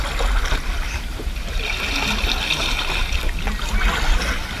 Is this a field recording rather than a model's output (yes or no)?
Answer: yes